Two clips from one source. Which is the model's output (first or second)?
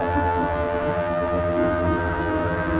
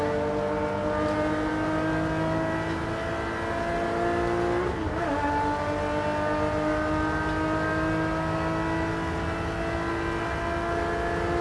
first